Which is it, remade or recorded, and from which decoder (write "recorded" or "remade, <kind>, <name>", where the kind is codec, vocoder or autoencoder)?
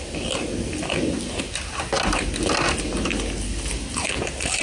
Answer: recorded